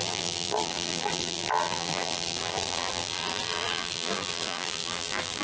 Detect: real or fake fake